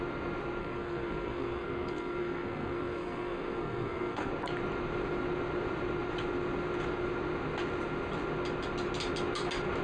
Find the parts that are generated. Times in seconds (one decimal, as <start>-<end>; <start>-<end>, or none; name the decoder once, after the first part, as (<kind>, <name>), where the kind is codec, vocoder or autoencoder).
0.6-4.3 (codec, SNAC)